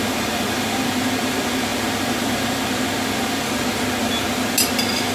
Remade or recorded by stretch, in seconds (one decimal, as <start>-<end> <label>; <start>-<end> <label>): 0.0-5.1 recorded